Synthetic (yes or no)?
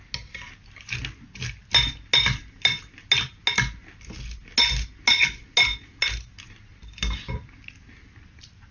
no